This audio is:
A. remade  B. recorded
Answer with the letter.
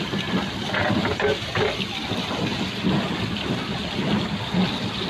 B